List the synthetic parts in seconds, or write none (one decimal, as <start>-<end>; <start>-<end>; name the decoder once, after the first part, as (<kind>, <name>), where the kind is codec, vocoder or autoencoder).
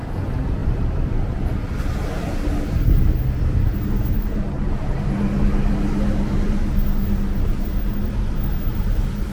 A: 0.6-1.6 (vocoder, BigVGAN v2)